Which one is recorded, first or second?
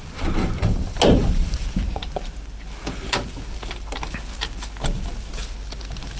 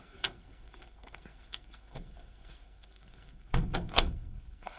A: first